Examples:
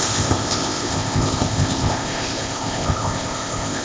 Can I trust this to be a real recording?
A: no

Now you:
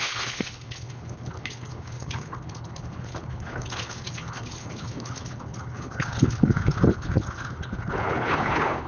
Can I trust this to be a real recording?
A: no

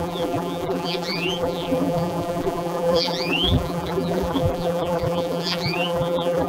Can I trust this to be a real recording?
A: no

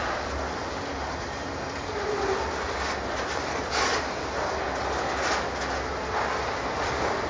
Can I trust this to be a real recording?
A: yes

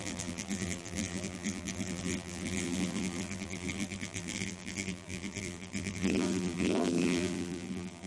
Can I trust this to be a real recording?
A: no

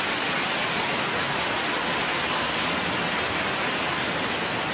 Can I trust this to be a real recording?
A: yes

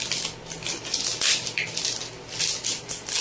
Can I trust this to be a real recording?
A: yes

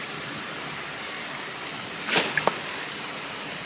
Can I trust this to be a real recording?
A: yes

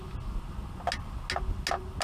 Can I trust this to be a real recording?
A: yes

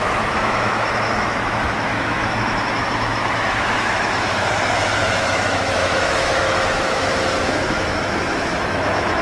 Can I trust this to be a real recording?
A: no